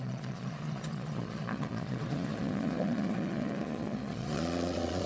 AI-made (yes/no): yes